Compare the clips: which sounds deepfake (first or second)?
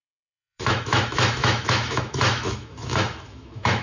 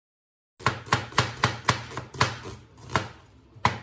first